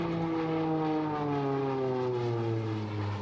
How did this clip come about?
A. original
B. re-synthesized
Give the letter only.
A